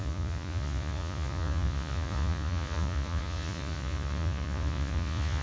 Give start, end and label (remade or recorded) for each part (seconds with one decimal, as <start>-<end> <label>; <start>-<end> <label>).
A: 0.0-5.4 remade